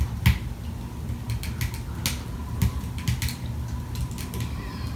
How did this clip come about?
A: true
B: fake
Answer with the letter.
A